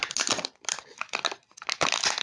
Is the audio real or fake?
real